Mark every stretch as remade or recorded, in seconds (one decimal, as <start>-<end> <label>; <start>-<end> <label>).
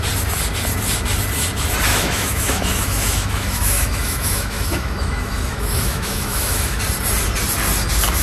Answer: 0.0-1.9 recorded; 1.9-6.8 remade; 6.8-8.2 recorded